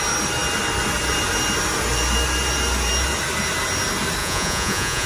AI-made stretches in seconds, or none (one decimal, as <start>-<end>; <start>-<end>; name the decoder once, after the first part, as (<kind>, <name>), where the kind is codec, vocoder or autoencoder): 4.2-5.1 (vocoder, Vocos)